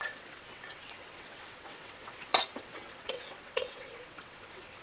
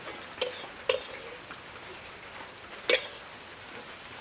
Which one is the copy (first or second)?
first